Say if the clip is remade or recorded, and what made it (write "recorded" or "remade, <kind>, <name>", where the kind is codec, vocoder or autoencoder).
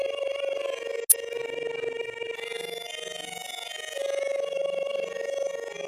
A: recorded